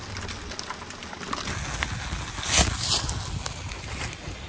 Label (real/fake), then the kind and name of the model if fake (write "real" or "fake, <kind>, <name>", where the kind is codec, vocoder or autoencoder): real